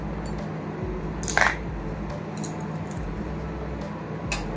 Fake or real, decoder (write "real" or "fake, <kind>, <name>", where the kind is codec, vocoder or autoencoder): real